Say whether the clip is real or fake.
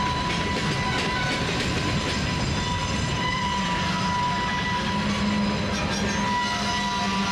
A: real